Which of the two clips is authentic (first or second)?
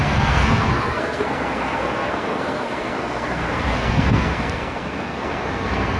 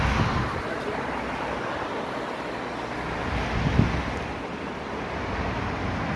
second